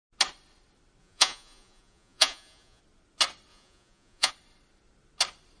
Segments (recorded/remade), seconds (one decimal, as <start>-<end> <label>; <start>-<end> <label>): 0.0-1.0 recorded; 1.0-2.8 remade; 2.8-3.5 recorded; 3.5-4.3 remade; 4.3-5.6 recorded